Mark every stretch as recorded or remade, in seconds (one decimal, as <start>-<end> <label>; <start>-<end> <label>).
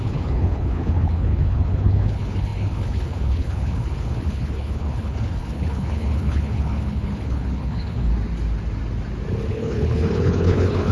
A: 0.0-8.1 remade; 8.1-9.5 recorded; 9.5-10.9 remade